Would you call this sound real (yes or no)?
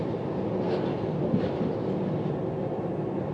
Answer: yes